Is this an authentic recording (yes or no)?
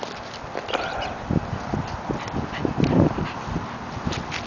yes